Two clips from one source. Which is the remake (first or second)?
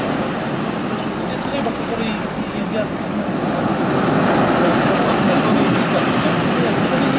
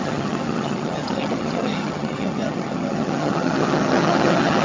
second